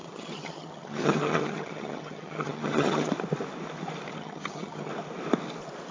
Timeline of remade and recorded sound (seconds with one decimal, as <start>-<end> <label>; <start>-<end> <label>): 0.0-3.1 remade; 3.1-4.1 recorded; 4.1-4.9 remade; 4.9-5.9 recorded